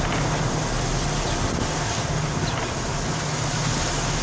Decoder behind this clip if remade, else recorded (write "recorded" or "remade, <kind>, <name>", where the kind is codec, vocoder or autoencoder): recorded